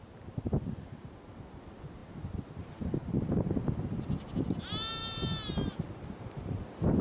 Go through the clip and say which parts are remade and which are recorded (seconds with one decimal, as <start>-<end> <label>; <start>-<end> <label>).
0.0-7.0 recorded